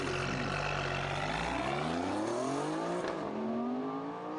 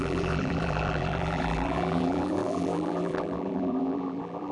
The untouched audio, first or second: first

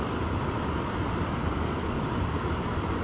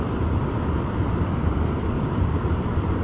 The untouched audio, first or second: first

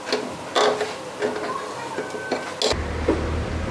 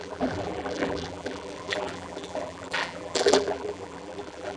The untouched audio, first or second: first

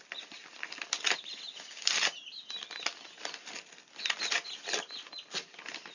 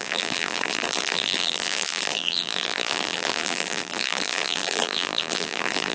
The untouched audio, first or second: first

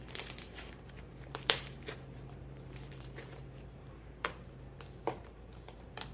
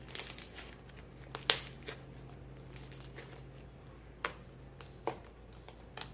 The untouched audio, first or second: second